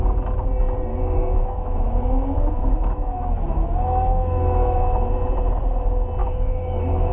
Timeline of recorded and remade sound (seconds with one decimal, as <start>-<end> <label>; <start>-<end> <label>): 0.0-0.9 recorded; 0.9-5.1 remade; 5.1-6.2 recorded; 6.2-7.1 remade